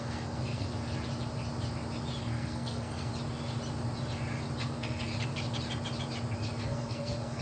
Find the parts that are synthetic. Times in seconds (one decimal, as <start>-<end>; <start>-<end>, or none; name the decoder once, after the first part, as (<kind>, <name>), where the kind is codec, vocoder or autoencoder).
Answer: 0.0-0.7 (codec, SNAC); 2.2-3.1; 4.6-5.1; 6.6-7.4